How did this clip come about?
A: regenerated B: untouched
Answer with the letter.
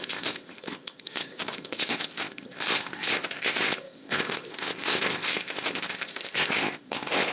A